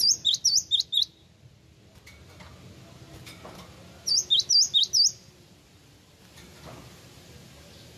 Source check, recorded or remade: recorded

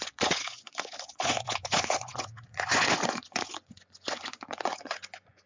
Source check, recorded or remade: remade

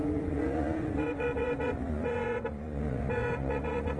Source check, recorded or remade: remade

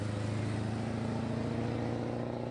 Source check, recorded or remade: recorded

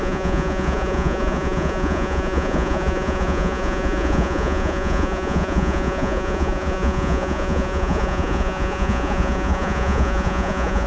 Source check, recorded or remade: remade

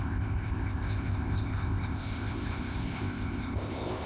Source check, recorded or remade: remade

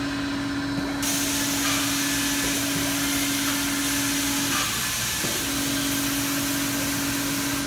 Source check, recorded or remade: recorded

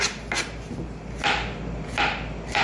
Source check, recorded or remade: recorded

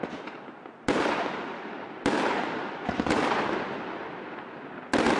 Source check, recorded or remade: recorded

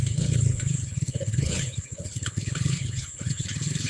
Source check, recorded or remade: remade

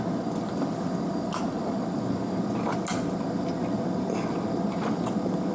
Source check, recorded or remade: recorded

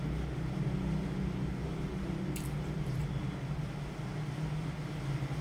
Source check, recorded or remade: recorded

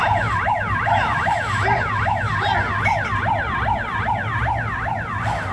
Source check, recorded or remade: recorded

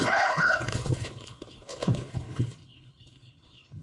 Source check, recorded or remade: remade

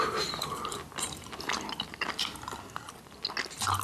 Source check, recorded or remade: recorded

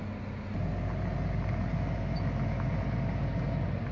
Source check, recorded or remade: recorded